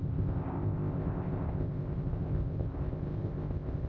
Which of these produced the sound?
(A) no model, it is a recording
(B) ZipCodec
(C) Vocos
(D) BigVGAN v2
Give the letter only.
B